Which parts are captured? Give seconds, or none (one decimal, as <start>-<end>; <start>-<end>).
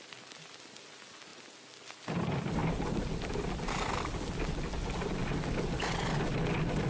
0.0-6.9